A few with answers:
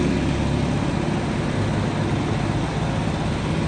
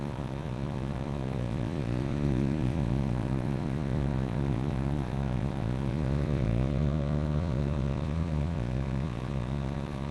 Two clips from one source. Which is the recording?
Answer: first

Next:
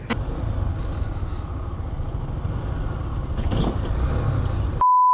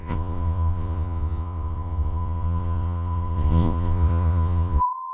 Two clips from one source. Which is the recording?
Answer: first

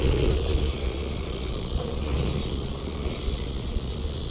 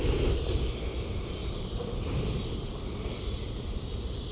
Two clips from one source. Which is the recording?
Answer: second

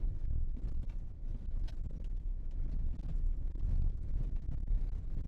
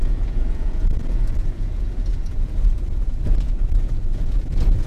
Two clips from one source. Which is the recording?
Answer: first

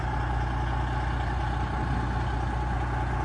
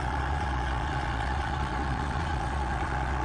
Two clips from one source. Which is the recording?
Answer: first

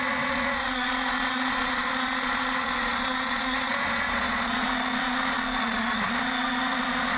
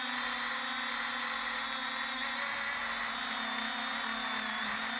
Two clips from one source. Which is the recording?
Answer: second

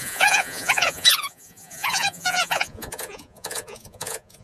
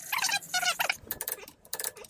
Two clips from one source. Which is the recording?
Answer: second